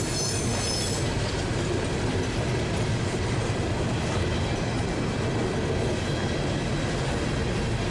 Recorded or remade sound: recorded